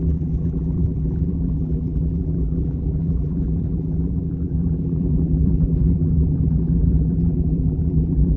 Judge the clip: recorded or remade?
remade